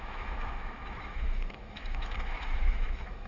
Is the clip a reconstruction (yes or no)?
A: yes